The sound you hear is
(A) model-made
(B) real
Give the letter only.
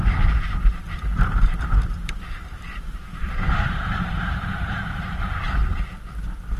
A